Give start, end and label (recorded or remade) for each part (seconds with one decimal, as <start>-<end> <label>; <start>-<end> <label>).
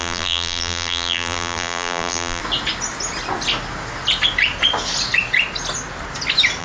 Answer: 0.0-2.4 remade; 2.4-6.6 recorded